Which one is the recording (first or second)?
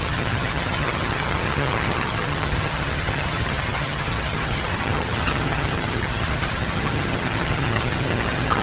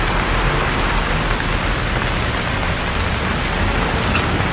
second